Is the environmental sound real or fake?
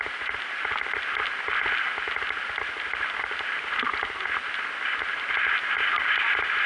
real